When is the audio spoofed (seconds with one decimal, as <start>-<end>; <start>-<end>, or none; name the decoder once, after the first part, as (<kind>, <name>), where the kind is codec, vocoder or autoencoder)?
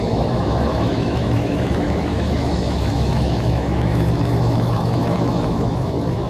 0.0-6.3 (autoencoder, DAC-VAE)